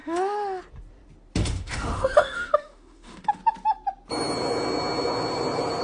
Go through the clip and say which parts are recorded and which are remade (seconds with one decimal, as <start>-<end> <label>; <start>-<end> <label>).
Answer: 0.0-0.6 remade; 0.6-1.4 recorded; 1.4-3.4 remade; 3.4-5.8 recorded